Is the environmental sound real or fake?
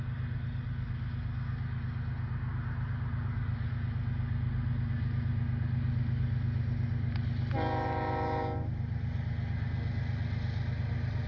real